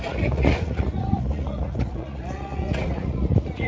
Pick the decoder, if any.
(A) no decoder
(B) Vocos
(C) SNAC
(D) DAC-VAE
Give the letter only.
B